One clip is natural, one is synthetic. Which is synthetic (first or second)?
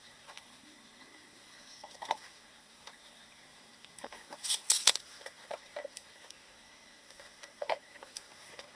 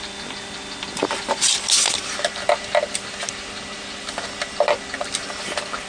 first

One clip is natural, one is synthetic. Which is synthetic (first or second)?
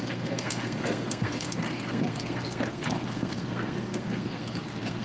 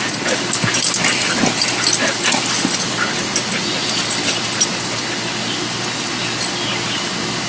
first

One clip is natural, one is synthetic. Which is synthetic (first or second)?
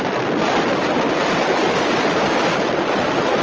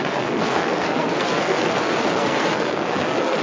second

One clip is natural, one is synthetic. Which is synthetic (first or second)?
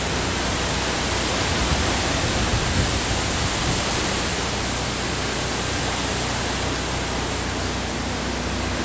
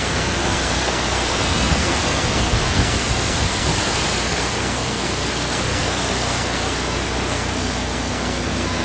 second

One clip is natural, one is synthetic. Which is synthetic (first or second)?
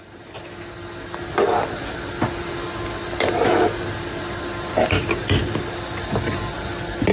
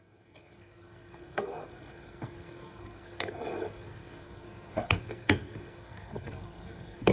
second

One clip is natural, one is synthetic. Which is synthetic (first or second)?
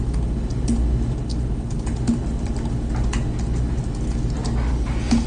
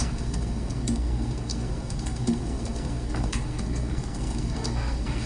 second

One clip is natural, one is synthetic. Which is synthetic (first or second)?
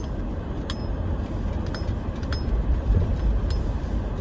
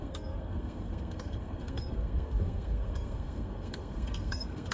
second